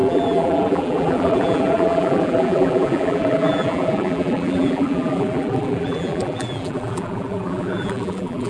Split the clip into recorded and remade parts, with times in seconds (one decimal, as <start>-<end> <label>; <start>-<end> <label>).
0.0-8.5 remade